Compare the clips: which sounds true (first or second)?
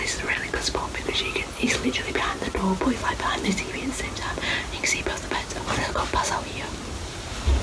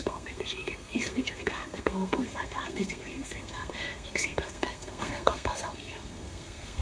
first